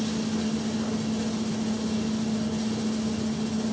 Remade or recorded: recorded